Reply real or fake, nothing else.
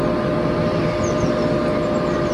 real